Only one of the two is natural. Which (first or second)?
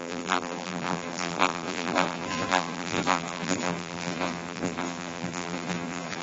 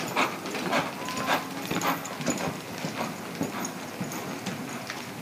second